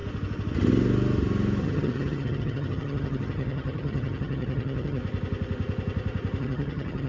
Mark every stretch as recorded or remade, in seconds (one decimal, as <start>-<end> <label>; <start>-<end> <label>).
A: 0.0-1.6 recorded; 1.6-5.0 remade; 5.0-6.4 recorded; 6.4-7.1 remade